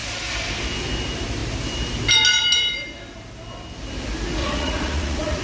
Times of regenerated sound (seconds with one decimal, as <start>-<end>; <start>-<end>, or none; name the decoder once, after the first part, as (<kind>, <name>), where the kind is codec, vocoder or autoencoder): 4.4-5.4 (vocoder, Vocos)